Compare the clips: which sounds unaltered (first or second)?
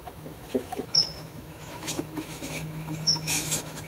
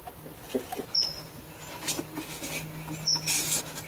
second